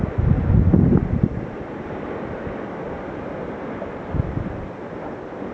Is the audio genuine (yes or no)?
yes